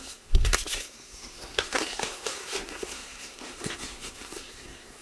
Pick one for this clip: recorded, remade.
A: remade